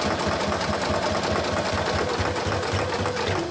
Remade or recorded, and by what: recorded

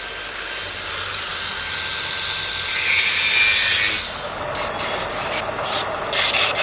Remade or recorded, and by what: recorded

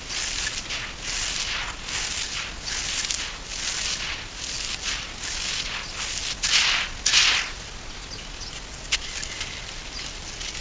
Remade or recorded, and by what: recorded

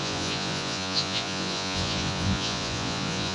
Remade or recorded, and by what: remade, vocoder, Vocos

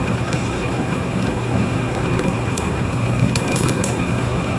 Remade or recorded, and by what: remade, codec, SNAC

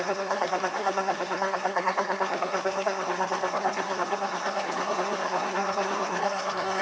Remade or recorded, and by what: remade, codec, SNAC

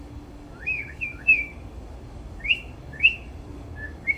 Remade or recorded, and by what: remade, codec, DAC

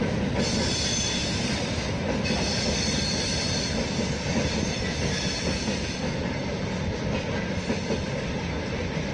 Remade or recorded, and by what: recorded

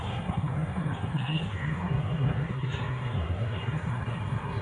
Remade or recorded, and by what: remade, codec, SNAC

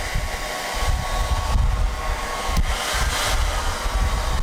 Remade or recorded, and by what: recorded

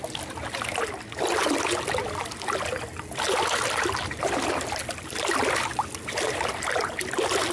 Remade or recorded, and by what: recorded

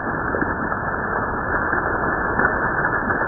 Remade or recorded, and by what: recorded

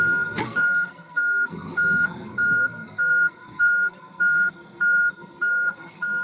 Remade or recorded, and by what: remade, codec, SNAC